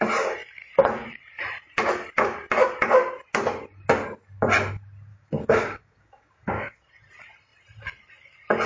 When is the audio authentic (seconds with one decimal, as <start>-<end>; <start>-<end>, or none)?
0.0-5.1; 6.8-8.7